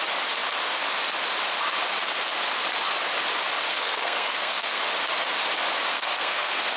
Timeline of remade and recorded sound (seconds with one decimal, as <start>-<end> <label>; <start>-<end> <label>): 0.0-3.7 recorded; 3.7-4.8 remade; 4.8-5.9 recorded; 5.9-6.8 remade